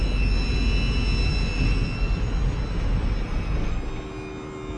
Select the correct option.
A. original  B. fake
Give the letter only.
A